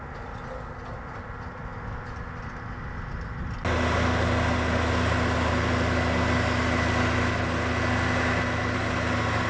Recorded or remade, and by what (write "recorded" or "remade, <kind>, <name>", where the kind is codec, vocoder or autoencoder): recorded